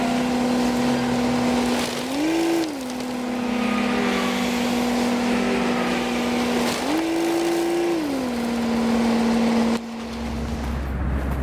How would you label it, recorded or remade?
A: recorded